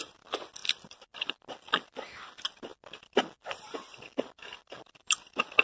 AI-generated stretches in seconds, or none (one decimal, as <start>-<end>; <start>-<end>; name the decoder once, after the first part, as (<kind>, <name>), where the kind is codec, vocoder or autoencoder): 0.6-1.3 (vocoder, BigVGAN v2); 2.7-4.8